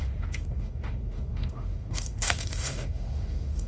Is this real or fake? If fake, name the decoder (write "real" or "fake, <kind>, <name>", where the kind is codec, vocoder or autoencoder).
fake, autoencoder, DAC-VAE